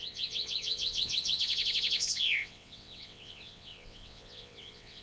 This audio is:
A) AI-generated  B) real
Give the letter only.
A